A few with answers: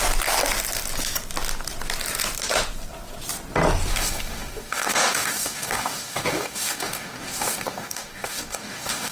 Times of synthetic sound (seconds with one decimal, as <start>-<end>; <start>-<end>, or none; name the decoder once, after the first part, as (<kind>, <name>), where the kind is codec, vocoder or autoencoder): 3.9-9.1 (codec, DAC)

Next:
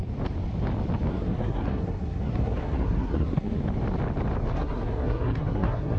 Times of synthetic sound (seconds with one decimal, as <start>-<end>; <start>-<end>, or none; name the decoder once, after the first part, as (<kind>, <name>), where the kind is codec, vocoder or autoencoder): 1.1-3.6 (codec, SNAC); 4.5-6.0

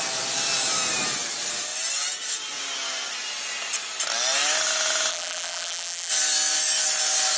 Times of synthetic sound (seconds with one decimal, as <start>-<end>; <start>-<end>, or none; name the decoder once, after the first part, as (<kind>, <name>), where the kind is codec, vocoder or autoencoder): 5.1-6.1 (vocoder, BigVGAN v2)

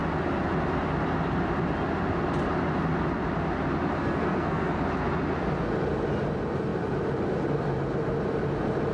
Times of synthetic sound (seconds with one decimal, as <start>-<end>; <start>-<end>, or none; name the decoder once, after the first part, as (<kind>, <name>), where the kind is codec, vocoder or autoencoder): 4.0-4.8 (codec, SNAC)

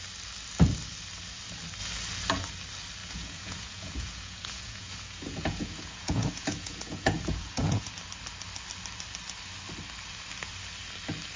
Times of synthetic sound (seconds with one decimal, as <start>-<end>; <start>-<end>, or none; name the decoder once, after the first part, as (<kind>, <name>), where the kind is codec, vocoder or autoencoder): 3.0-7.9 (vocoder, Vocos)

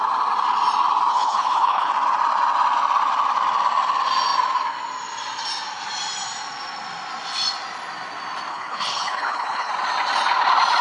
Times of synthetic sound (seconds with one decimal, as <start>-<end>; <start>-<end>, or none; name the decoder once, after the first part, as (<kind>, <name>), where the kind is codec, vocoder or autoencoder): 1.1-1.9 (codec, HILCodec); 8.5-9.7

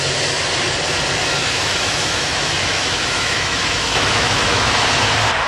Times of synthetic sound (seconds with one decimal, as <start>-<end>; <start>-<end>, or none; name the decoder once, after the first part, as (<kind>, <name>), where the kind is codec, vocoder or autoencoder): 1.4-4.7 (autoencoder, DAC-VAE)

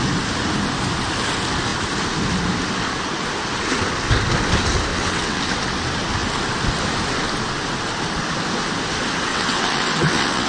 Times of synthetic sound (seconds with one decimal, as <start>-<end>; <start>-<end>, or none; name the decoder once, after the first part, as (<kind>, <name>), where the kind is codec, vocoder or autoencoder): 4.9-5.4 (vocoder, WaveNeXt); 9.3-10.5